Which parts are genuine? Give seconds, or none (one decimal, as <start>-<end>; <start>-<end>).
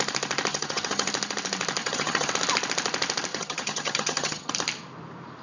0.0-0.5; 1.1-1.8; 2.3-3.3; 4.5-5.4